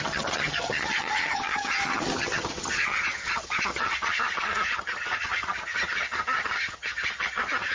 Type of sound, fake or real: fake